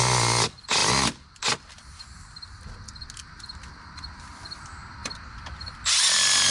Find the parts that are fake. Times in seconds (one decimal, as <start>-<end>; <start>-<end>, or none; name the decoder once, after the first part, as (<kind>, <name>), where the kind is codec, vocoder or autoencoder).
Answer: none